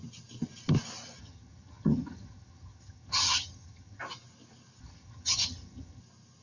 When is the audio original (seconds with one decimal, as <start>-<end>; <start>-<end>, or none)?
0.0-1.2; 4.0-4.8; 6.0-6.4